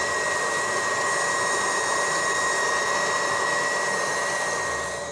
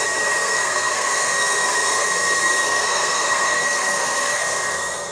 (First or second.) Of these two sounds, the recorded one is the first